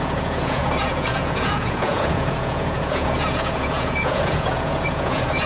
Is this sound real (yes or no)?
no